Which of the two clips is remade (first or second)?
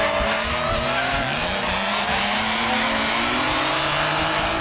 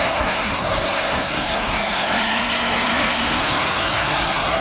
second